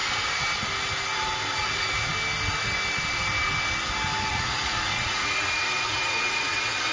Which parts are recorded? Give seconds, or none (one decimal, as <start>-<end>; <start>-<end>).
0.0-1.5; 2.1-4.3